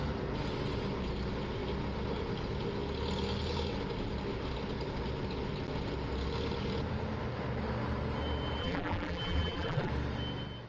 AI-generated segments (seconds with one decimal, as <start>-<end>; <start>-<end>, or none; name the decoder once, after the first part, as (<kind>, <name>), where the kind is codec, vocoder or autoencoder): 8.6-9.9 (vocoder, BigVGAN v2)